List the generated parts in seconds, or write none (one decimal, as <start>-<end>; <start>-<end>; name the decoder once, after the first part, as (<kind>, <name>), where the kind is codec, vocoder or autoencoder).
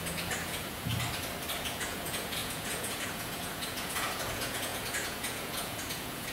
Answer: 0.0-0.9 (vocoder, Vocos); 1.6-6.3